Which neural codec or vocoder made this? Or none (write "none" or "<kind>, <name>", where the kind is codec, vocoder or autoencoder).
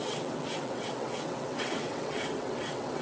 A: vocoder, WaveNeXt